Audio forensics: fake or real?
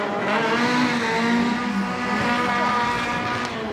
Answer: real